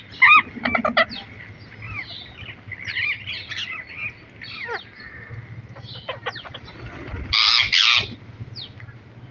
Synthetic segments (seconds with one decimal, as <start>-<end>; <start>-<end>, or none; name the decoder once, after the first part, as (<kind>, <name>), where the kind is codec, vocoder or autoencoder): 2.7-3.4 (vocoder, BigVGAN v2)